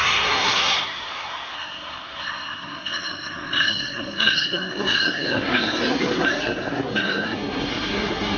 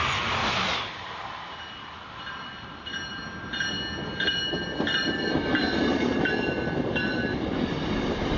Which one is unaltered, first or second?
second